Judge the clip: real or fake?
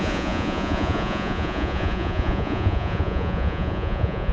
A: fake